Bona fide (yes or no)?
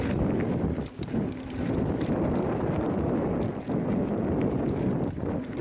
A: no